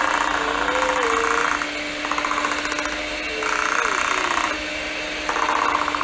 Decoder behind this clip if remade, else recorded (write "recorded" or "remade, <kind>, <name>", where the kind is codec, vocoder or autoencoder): recorded